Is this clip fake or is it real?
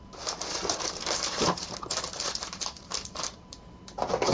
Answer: fake